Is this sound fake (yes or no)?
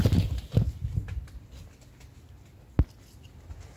no